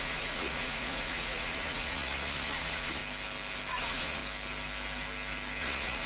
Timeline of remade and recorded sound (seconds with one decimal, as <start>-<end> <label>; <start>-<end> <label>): 0.0-3.0 remade; 3.0-3.7 recorded; 3.7-4.2 remade; 4.2-5.6 recorded; 5.6-6.1 remade